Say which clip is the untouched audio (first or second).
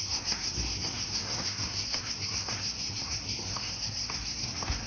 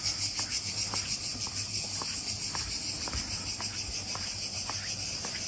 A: second